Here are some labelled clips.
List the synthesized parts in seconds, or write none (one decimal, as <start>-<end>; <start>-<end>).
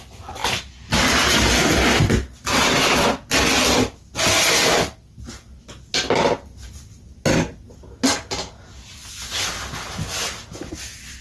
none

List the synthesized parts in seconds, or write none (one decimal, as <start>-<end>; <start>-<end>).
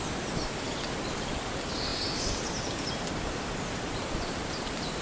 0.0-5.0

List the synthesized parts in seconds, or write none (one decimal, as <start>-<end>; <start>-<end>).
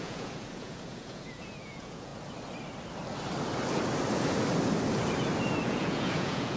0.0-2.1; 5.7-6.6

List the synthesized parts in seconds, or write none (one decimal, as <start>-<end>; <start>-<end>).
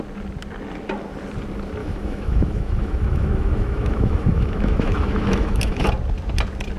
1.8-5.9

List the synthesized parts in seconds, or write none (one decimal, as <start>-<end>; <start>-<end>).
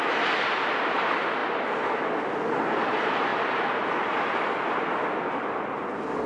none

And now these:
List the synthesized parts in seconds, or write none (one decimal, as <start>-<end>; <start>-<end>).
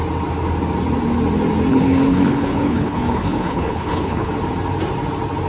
1.7-4.3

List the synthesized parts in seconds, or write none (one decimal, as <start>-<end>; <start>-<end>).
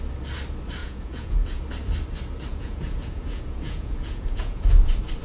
0.8-1.6; 2.5-4.7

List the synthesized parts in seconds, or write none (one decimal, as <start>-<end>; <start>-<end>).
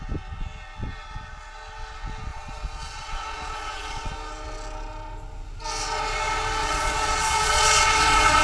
2.3-4.1; 6.6-8.4